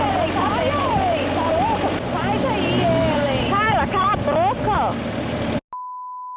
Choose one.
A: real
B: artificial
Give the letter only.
A